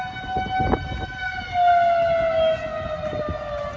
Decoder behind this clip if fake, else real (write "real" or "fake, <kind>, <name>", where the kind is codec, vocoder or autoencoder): real